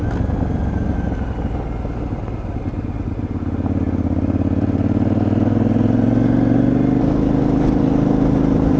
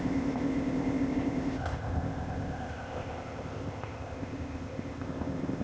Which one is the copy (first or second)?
second